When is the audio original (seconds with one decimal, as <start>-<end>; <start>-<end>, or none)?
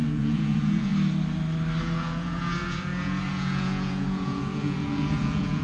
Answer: 0.9-1.8